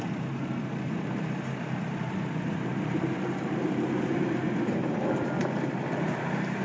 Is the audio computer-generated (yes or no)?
yes